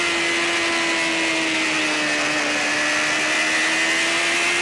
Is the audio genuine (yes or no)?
yes